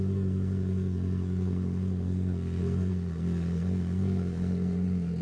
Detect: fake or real fake